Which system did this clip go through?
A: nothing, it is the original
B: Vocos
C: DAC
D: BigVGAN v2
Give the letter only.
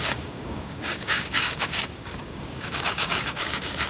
C